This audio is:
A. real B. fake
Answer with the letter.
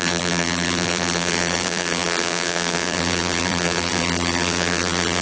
B